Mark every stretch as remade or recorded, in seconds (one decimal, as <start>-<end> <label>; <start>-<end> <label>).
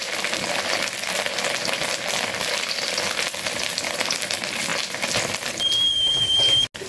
0.0-6.9 recorded